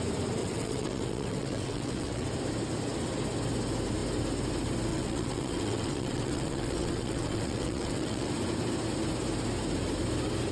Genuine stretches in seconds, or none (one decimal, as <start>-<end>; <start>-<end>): 0.0-0.4; 2.3-4.9; 8.3-10.5

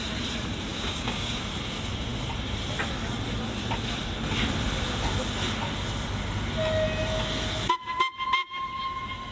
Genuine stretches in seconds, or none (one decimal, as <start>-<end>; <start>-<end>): 0.0-0.7; 1.4-9.3

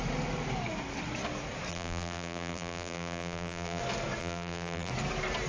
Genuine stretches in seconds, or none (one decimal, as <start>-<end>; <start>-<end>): 0.0-1.7; 3.8-4.2; 4.9-5.5

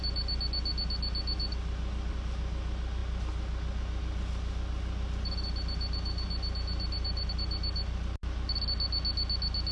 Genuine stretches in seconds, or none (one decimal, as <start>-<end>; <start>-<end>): 0.0-9.7